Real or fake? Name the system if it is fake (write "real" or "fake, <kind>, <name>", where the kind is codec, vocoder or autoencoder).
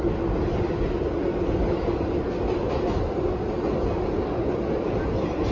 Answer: real